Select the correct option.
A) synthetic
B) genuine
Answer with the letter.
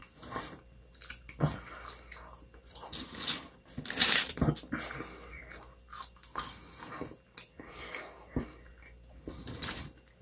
B